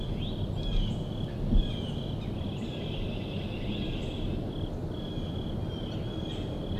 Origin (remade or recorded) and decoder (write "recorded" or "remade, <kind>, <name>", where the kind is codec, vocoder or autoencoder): recorded